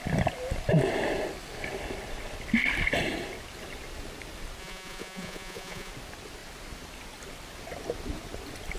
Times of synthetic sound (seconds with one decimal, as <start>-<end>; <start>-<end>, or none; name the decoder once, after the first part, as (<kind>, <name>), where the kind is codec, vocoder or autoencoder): 4.6-5.9 (vocoder, Vocos)